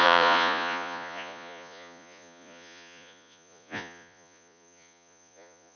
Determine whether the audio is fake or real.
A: fake